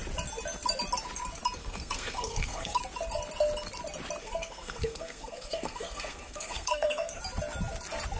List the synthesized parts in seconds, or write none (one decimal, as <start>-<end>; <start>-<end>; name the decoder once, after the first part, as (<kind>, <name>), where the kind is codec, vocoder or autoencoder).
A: 1.6-2.8 (codec, SNAC); 4.2-7.2